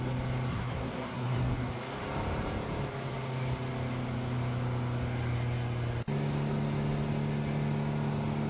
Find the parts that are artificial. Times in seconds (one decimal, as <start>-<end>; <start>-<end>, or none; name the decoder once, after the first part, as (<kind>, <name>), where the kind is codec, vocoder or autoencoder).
0.5-1.7 (codec, SNAC)

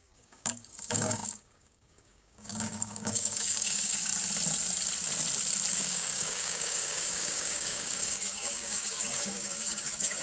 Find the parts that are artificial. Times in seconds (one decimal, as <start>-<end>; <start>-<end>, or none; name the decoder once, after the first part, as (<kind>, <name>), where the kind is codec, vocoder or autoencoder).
0.0-4.1 (codec, DAC); 5.7-10.2

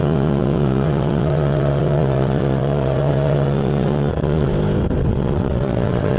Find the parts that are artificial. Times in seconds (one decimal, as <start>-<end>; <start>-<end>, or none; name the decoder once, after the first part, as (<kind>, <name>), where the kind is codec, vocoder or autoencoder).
0.0-4.5 (vocoder, WaveNeXt); 5.1-6.2